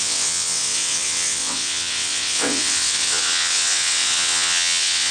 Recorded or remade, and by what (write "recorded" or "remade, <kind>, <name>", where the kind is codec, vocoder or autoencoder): remade, vocoder, WaveNeXt